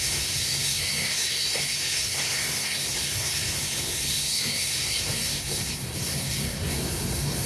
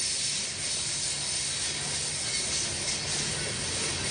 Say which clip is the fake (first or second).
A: first